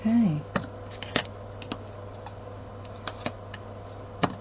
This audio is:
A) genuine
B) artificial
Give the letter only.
A